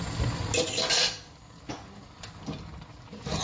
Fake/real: real